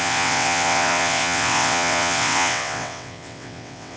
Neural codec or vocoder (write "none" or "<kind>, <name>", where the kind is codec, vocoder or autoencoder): vocoder, WaveNeXt